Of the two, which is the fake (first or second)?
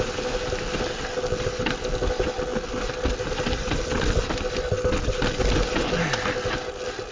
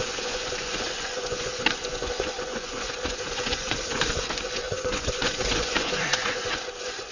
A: second